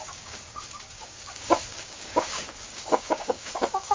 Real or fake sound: fake